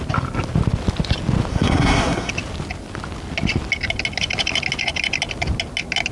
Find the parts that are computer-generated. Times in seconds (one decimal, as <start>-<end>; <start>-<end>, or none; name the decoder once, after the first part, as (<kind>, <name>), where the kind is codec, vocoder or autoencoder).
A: 1.5-2.3 (codec, SNAC)

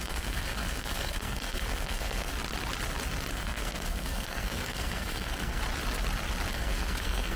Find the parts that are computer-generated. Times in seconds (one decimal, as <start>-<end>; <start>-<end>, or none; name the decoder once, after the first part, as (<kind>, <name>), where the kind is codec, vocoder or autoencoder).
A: 0.0-2.3 (codec, SNAC); 3.3-5.6; 6.5-7.4